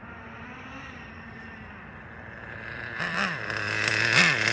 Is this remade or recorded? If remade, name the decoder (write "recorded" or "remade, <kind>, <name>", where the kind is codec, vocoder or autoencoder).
remade, vocoder, BigVGAN v2